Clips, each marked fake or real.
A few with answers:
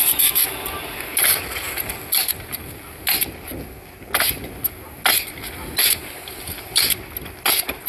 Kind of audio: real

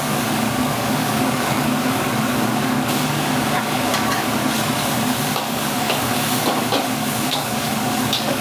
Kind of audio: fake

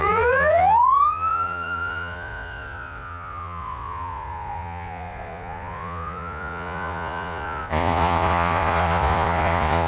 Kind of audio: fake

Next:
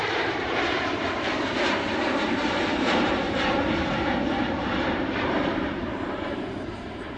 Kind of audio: fake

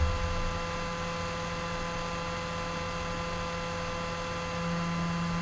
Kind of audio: real